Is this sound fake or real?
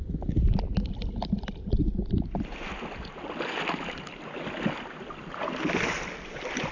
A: real